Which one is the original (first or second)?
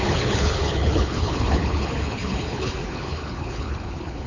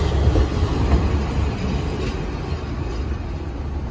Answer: second